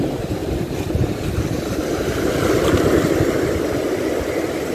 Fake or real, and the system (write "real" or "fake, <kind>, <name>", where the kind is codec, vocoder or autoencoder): real